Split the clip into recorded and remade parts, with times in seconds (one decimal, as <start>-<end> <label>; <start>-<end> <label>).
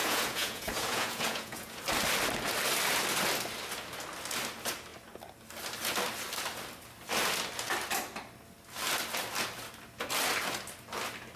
0.0-1.8 remade; 1.8-11.4 recorded